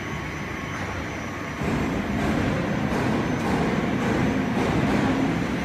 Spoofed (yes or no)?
yes